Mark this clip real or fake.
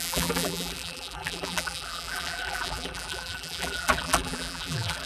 fake